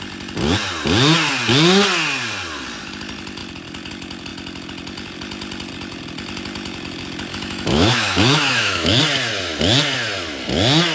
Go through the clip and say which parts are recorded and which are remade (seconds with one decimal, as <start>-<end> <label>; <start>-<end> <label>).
0.0-7.3 recorded; 7.3-9.0 remade; 9.0-10.9 recorded